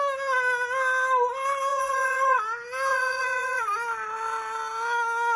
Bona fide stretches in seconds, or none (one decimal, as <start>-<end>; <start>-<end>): 0.0-1.7; 2.4-2.9; 3.7-5.4